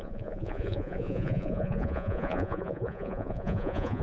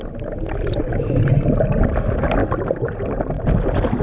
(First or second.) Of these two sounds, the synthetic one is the first